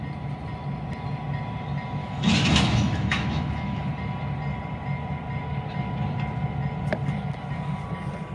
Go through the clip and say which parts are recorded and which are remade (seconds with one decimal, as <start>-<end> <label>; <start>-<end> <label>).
0.0-2.0 recorded; 2.0-3.9 remade; 3.9-8.3 recorded